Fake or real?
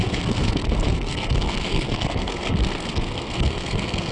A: fake